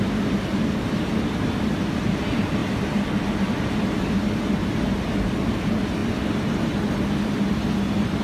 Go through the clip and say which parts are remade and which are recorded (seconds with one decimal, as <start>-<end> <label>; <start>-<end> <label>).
0.0-8.2 recorded